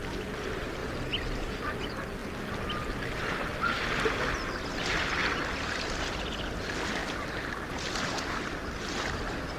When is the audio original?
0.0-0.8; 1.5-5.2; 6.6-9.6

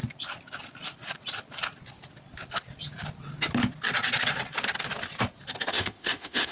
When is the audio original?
0.0-5.7